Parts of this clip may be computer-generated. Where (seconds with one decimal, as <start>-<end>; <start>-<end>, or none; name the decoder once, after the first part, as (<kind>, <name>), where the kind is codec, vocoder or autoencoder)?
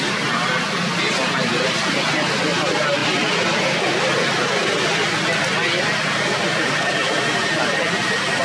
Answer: none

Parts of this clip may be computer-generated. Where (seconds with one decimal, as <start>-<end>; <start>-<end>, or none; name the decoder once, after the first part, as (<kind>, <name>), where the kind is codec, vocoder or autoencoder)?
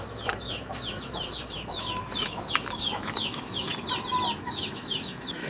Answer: 0.0-3.7 (autoencoder, DAC-VAE); 4.4-5.5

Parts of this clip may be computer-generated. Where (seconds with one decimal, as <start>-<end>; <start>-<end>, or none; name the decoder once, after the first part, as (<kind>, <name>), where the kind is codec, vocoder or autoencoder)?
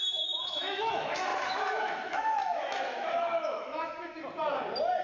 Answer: 0.0-4.2 (autoencoder, DAC-VAE)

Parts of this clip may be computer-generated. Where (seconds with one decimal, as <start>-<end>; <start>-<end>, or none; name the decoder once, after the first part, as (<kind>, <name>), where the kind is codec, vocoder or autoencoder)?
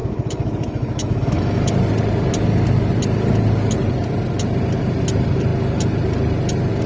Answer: 0.0-1.7 (autoencoder, DAC-VAE)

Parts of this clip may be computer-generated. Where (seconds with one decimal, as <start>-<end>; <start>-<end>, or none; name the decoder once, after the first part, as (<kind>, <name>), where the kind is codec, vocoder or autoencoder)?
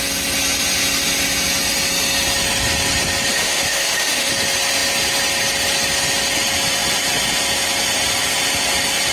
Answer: 3.3-4.3 (autoencoder, DAC-VAE)